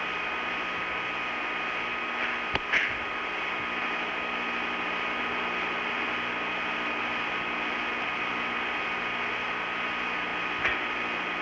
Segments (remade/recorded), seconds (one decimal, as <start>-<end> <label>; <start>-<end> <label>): 0.0-11.4 recorded